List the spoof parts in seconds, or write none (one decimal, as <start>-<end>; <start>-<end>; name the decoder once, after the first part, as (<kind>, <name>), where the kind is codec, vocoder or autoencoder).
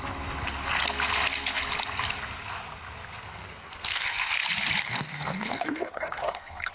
3.2-4.3 (codec, SNAC); 4.8-6.7